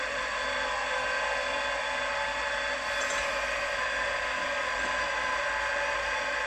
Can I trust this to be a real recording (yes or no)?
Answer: no